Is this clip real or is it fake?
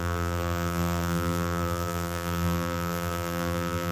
fake